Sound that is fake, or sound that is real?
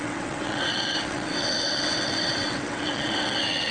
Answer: fake